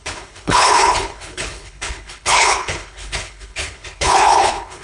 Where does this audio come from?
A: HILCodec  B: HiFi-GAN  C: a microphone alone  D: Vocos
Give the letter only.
A